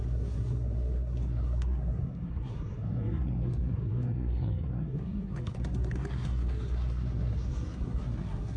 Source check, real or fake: fake